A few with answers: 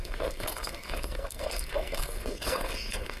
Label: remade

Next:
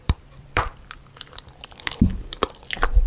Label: remade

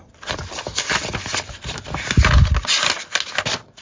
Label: recorded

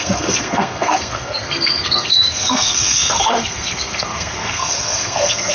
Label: remade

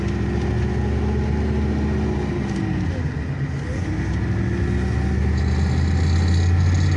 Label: recorded